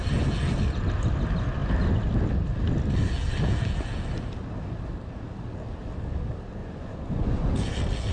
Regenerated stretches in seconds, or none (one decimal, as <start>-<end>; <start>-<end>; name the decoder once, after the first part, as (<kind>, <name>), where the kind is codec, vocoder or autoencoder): 6.6-7.5 (vocoder, Vocos)